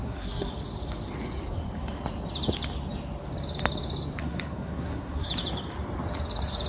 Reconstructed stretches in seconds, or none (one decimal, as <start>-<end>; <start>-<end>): 0.0-0.5; 4.2-5.3